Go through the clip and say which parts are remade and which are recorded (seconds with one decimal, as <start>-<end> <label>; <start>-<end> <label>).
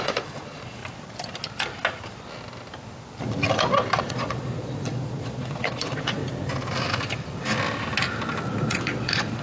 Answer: 0.0-0.8 remade; 0.8-4.0 recorded; 4.0-6.2 remade; 6.2-8.6 recorded; 8.6-9.4 remade